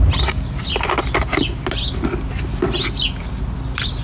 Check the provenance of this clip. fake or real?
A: real